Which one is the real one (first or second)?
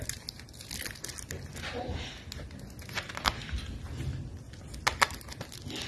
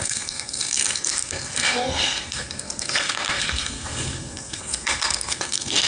first